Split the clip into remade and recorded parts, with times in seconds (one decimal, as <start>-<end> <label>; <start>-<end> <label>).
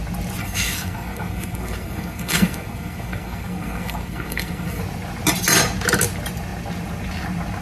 0.0-0.4 recorded; 0.4-4.8 remade; 4.8-7.6 recorded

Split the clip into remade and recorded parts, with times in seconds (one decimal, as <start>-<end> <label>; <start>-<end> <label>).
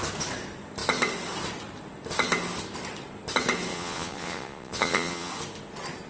0.0-3.7 recorded; 3.7-5.3 remade; 5.3-6.1 recorded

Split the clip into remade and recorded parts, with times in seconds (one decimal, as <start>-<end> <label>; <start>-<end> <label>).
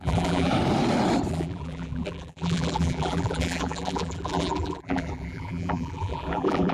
0.0-0.5 remade; 0.5-1.3 recorded; 1.3-6.7 remade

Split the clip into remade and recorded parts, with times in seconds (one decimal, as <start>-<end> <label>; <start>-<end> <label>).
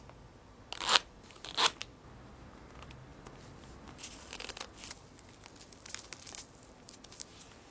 0.0-7.7 recorded